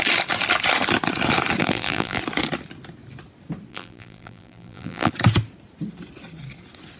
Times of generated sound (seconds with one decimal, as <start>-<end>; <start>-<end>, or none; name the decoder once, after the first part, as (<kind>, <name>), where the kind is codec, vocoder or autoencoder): 1.6-2.2 (vocoder, BigVGAN v2); 3.7-5.1